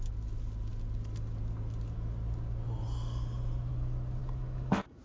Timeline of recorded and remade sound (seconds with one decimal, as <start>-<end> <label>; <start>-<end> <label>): 0.0-4.2 recorded; 4.2-5.0 remade